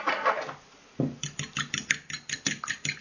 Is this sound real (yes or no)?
yes